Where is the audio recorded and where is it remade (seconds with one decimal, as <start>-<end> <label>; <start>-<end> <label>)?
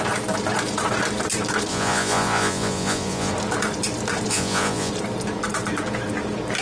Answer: 0.0-1.7 recorded; 1.7-3.3 remade; 3.3-4.3 recorded; 4.3-4.9 remade; 4.9-6.6 recorded